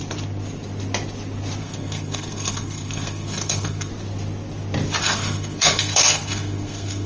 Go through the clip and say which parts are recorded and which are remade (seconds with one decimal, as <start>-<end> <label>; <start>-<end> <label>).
0.0-1.6 recorded; 1.6-3.9 remade; 3.9-5.0 recorded; 5.0-7.1 remade